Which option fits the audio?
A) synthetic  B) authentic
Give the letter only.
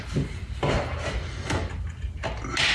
B